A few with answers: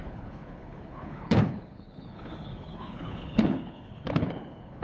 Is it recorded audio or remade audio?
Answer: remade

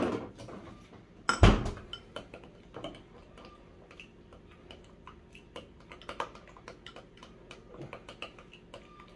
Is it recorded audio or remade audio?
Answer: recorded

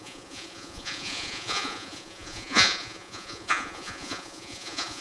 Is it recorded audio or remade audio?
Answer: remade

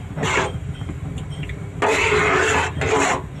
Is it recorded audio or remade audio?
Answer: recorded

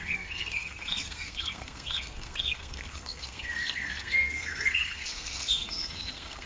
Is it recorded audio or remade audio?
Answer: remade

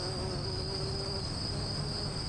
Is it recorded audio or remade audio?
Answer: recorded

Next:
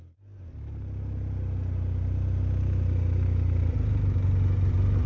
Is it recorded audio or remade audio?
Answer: recorded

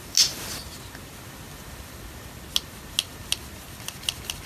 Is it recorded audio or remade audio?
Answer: recorded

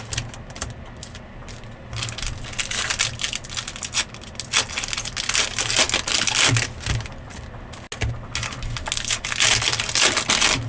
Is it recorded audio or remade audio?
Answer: recorded